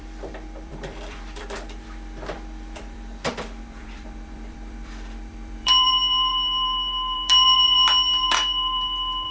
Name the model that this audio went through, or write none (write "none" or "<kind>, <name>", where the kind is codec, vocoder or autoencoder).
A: vocoder, BigVGAN v2